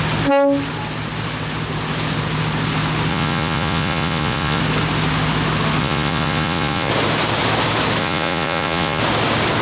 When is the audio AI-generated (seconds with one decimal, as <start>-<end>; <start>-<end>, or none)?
3.1-4.6; 5.8-6.9; 8.0-9.0